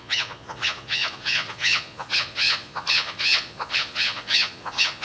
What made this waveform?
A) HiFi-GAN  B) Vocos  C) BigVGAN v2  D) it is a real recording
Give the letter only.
B